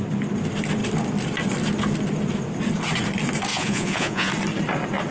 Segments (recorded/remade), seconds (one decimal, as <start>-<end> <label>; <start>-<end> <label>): 0.0-3.5 recorded; 3.5-4.3 remade; 4.3-5.1 recorded